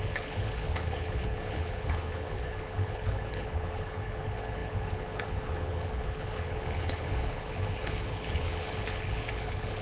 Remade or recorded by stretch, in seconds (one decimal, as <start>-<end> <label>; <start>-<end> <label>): 0.0-9.8 remade